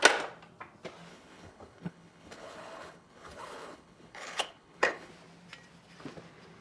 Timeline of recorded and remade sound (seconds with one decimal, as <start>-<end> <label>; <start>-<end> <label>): 0.0-1.1 recorded; 1.1-5.1 remade; 5.1-6.6 recorded